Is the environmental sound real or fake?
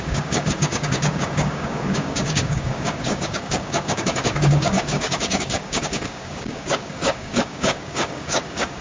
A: fake